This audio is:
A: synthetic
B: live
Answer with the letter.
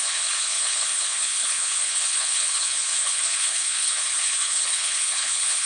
A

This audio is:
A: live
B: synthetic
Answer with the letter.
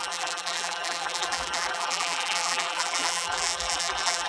B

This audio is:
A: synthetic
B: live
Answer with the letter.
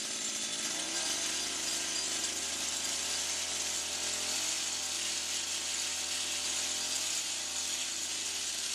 B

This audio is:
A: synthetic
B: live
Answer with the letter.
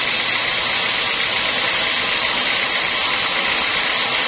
B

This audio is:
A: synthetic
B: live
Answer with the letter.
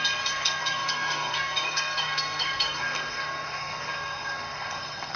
A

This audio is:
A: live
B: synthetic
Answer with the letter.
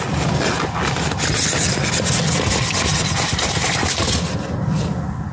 A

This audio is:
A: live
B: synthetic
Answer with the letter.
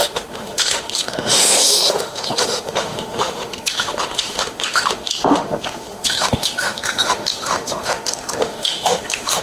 B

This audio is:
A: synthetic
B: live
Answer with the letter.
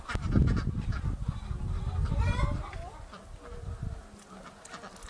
B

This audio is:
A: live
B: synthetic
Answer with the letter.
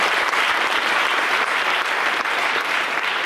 B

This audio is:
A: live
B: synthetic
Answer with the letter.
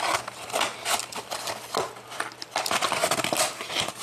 A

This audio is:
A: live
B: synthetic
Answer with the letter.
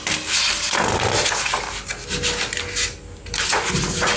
A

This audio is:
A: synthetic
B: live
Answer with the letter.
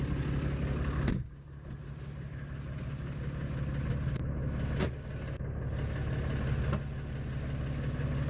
B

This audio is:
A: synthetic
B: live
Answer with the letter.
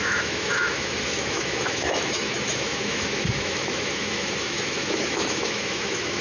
A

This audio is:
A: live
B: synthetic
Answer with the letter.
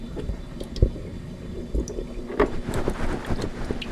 A